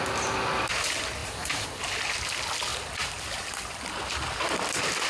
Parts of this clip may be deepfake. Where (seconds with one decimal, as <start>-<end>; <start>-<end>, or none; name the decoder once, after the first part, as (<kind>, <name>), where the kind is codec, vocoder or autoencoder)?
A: 1.2-2.0 (vocoder, BigVGAN v2)